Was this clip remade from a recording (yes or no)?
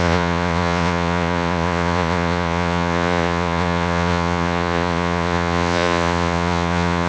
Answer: yes